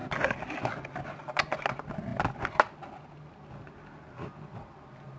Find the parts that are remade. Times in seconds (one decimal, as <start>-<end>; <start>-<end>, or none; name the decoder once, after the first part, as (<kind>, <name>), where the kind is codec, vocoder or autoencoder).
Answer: none